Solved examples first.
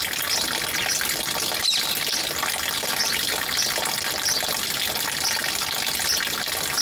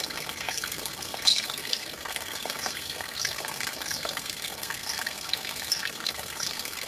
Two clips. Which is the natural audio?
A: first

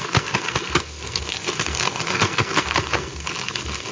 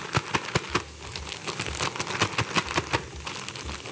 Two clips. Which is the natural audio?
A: second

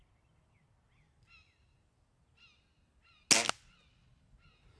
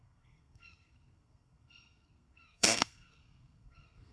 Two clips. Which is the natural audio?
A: first